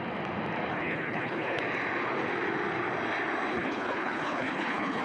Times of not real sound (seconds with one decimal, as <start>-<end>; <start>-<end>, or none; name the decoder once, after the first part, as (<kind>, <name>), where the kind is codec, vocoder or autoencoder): 0.7-1.6 (codec, HILCodec); 3.5-5.0